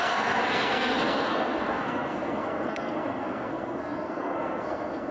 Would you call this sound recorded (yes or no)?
no